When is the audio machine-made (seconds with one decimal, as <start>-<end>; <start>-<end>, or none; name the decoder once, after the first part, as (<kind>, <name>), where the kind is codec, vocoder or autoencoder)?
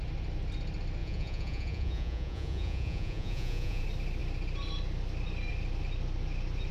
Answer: 1.0-3.8 (vocoder, Vocos)